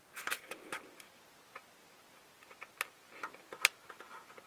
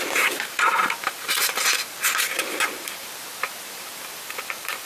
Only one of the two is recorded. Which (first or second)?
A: first